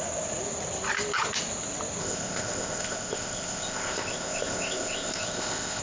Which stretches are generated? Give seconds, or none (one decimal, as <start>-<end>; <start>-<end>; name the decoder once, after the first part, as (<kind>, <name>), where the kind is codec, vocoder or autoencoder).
2.0-5.8 (codec, ZipCodec)